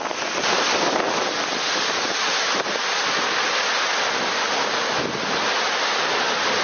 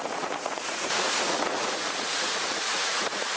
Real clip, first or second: first